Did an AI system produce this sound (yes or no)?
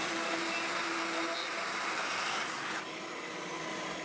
yes